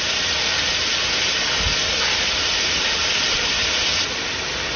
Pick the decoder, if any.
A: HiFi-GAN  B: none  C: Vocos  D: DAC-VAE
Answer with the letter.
B